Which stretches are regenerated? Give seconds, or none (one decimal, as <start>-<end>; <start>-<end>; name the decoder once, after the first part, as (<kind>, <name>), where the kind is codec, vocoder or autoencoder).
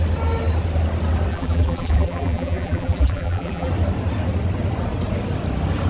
1.3-3.7 (vocoder, BigVGAN v2)